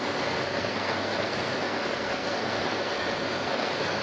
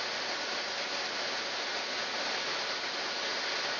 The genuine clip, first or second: second